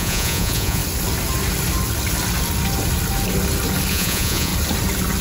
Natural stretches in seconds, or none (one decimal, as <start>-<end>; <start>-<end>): 0.8-3.9; 4.5-5.2